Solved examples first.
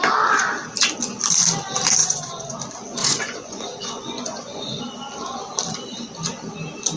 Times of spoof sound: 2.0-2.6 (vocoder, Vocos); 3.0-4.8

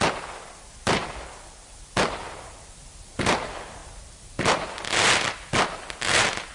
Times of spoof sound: none

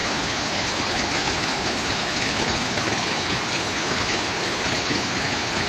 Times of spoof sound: 0.0-5.7 (codec, HILCodec)

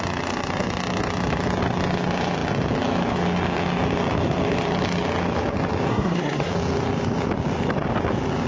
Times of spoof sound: 5.9-6.5 (codec, SNAC)

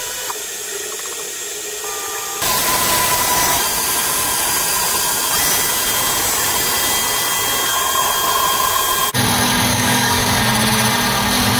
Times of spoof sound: 9.7-10.4 (codec, DAC)

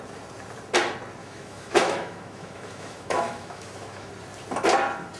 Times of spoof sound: 1.2-4.1 (autoencoder, DAC-VAE)

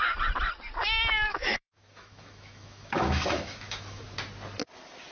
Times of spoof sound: 1.3-4.0 (autoencoder, DAC-VAE)

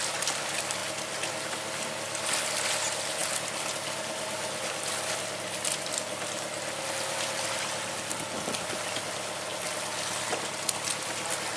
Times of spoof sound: none